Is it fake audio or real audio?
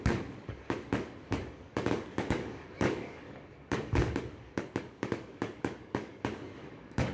fake